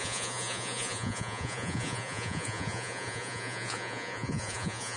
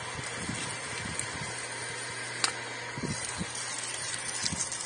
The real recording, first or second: second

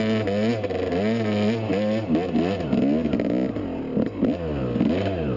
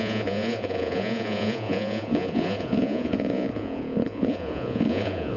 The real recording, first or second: first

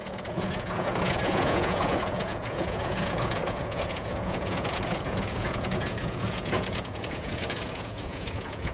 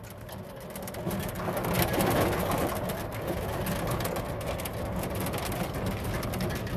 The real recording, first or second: second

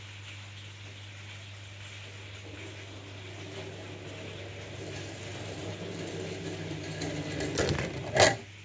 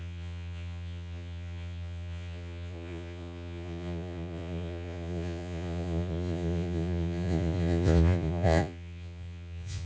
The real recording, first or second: first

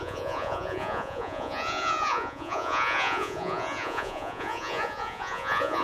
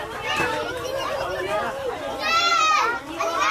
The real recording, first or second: second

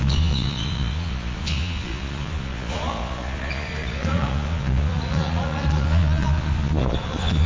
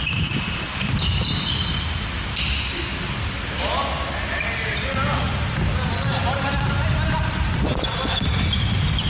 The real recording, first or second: second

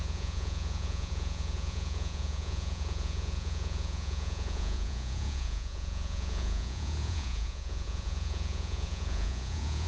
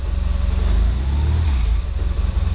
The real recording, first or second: second